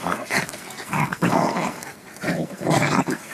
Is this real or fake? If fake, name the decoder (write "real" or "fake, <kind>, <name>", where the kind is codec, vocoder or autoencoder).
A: fake, codec, SNAC